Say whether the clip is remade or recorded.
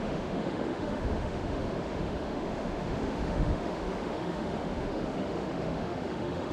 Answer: remade